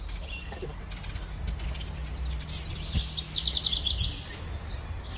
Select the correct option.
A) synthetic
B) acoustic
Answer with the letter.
B